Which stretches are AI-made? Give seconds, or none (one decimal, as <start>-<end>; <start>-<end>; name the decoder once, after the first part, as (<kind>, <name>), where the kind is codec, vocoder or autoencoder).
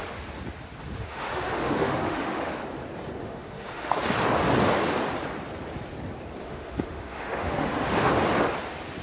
0.8-2.6 (autoencoder, DAC-VAE); 3.2-4.0; 6.4-8.1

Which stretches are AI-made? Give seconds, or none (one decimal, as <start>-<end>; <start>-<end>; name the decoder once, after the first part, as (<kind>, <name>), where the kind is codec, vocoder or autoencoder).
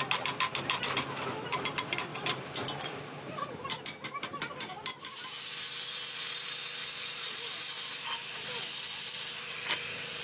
2.1-3.8 (vocoder, BigVGAN v2)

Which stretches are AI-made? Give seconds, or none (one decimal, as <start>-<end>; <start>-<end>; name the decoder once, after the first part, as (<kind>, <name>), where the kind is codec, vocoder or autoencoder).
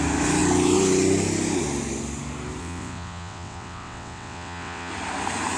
2.6-4.9 (vocoder, WaveNeXt)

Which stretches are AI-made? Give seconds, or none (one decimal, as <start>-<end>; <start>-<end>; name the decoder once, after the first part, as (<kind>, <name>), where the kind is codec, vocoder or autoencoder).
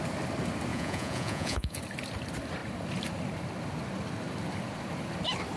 0.7-1.8 (vocoder, Vocos)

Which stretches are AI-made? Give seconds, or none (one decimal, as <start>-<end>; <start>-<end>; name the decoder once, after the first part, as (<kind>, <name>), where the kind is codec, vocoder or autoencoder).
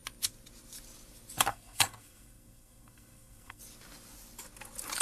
1.5-3.6 (codec, SNAC)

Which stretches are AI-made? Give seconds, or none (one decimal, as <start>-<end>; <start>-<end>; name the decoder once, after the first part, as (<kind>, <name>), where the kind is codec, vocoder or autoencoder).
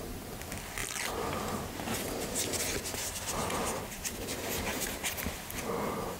4.7-5.7 (vocoder, BigVGAN v2)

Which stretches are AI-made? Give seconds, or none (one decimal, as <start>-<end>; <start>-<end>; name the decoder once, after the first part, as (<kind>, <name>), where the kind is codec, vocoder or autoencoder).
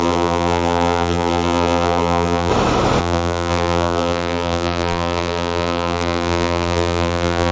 0.0-2.5 (vocoder, BigVGAN v2); 3.0-7.5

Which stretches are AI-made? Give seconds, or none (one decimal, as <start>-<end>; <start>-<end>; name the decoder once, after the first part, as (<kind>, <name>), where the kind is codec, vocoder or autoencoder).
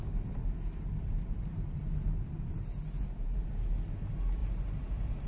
0.4-3.6 (vocoder, BigVGAN v2); 4.4-5.3